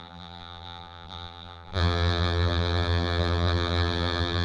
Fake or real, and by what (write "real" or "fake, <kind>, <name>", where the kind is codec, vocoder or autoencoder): fake, vocoder, BigVGAN v2